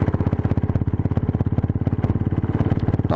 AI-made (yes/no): no